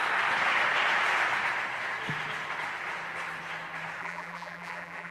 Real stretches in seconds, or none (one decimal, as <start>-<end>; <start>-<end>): 0.0-4.0